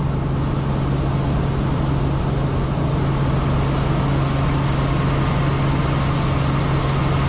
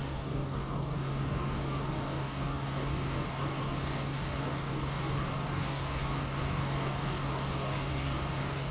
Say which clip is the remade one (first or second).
second